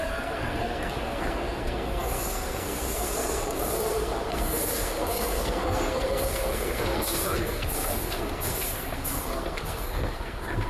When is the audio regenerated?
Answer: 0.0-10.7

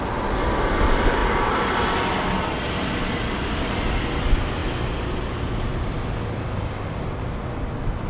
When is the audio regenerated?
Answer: none

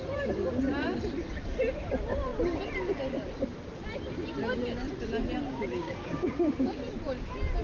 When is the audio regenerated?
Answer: 5.5-6.8